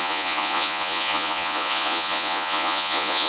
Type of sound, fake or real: fake